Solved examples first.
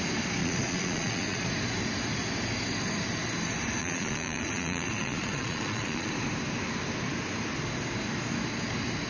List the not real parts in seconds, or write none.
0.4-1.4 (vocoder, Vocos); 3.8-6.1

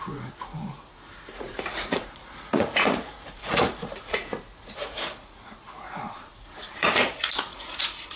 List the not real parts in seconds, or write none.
0.0-8.2 (vocoder, Vocos)